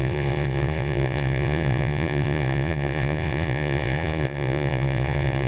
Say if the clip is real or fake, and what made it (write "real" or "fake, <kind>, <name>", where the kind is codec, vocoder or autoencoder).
fake, vocoder, Vocos